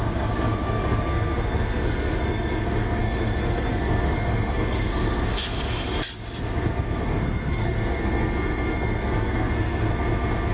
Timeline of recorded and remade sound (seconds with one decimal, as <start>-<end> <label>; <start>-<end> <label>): 0.0-5.9 remade; 5.9-6.7 recorded; 6.7-9.9 remade; 9.9-10.5 recorded